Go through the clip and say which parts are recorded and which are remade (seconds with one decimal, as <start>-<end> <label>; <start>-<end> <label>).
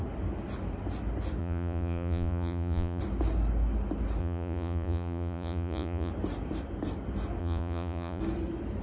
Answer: 0.0-1.4 recorded; 1.4-3.0 remade; 3.0-4.2 recorded; 4.2-6.1 remade; 6.1-7.4 recorded; 7.4-8.2 remade; 8.2-8.8 recorded